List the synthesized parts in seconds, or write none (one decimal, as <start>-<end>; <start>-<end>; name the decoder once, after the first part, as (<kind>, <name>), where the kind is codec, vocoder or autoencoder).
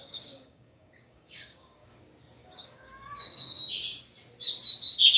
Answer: 0.0-2.0 (codec, DAC); 2.4-3.6